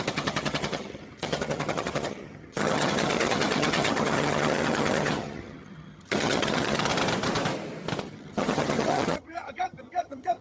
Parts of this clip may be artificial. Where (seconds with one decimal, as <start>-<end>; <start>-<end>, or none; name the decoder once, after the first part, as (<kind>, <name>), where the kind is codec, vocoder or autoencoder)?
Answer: 0.0-6.9 (vocoder, HiFi-GAN); 8.0-10.4